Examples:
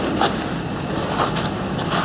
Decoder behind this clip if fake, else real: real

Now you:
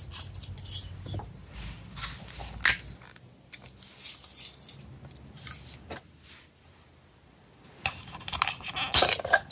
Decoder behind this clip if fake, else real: real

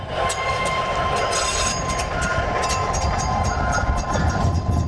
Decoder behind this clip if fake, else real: real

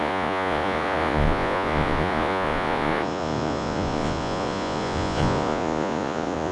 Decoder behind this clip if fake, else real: fake, vocoder, Vocos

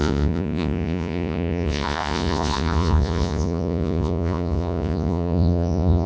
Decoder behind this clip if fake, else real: fake, vocoder, Vocos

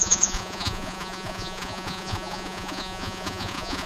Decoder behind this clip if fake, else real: fake, vocoder, Vocos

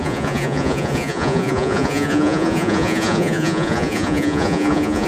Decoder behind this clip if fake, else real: fake, vocoder, Vocos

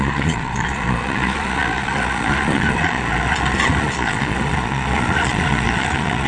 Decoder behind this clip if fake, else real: fake, vocoder, Vocos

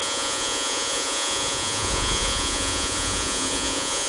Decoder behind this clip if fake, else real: fake, vocoder, Vocos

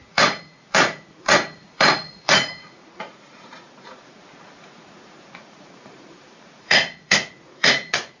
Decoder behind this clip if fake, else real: fake, vocoder, Vocos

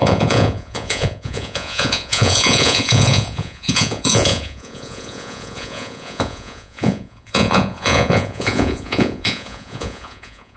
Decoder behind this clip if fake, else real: fake, vocoder, Vocos